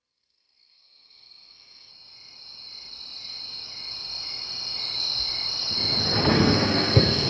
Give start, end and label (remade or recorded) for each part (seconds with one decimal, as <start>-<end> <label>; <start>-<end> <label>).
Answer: 0.0-1.9 remade; 1.9-6.3 recorded; 6.3-7.3 remade